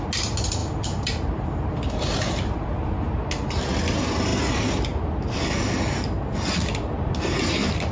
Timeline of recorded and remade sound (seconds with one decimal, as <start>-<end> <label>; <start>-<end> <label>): 0.0-0.6 recorded; 0.6-3.3 remade; 3.3-7.9 recorded